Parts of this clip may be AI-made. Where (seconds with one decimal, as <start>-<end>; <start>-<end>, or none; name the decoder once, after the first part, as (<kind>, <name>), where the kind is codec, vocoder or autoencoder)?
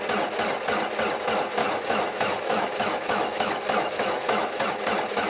1.6-4.7 (autoencoder, DAC-VAE)